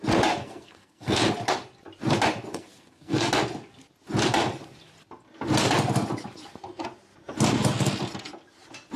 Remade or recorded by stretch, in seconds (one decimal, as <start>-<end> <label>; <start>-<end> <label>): 0.0-0.4 recorded; 0.4-1.2 remade; 1.2-2.5 recorded; 2.5-3.3 remade; 3.3-9.0 recorded